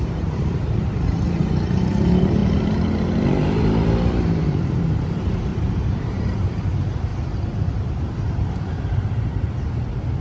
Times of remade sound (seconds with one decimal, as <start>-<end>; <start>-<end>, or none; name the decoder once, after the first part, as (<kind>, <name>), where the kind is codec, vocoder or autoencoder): 0.0-7.1 (vocoder, BigVGAN v2); 9.3-10.2